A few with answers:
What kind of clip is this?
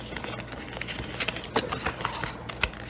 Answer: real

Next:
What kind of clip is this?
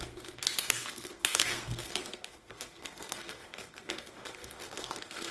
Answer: fake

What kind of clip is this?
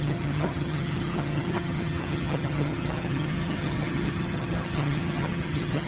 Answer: fake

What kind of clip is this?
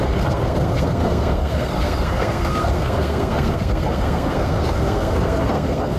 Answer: fake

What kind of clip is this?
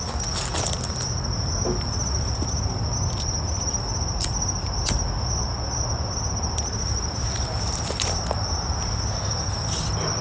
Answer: real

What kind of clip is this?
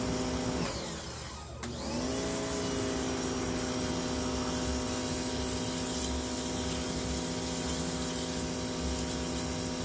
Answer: real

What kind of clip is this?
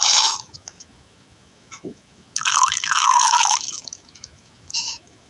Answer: fake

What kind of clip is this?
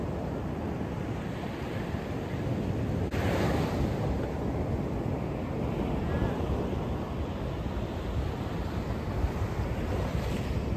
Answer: real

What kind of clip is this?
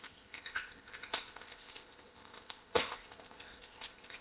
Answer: fake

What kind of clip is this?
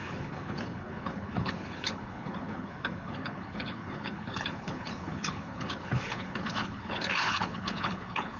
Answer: fake